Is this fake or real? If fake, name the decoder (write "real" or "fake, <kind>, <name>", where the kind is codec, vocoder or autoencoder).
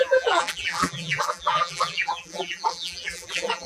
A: fake, vocoder, BigVGAN v2